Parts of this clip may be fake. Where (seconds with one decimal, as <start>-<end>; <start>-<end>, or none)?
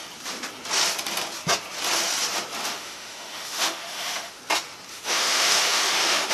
2.6-4.4; 4.9-6.3